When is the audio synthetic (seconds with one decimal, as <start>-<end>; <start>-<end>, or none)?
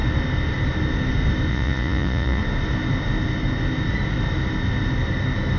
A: 1.5-2.4